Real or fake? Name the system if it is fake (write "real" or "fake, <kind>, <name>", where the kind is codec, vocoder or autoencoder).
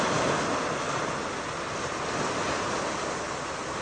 real